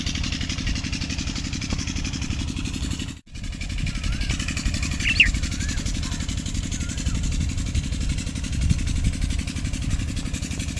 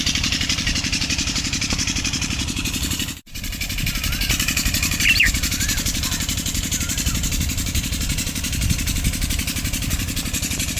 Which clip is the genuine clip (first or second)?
first